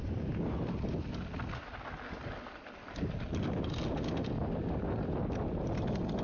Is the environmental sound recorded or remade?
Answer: recorded